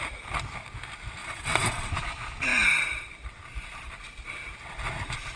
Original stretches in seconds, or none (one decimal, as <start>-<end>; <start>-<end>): 0.0-1.2; 1.9-5.4